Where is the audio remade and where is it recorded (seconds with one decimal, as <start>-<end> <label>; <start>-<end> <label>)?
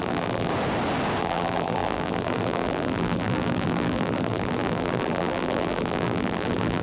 0.0-0.5 remade; 0.5-1.2 recorded; 1.2-6.8 remade